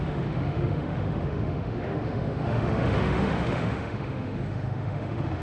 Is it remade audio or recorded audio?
remade